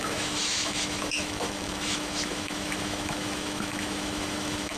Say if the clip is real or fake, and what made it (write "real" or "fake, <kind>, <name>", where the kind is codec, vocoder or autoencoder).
fake, autoencoder, DAC-VAE